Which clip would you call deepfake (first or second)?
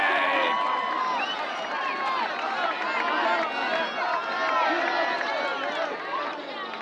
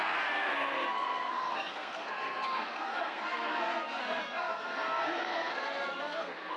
second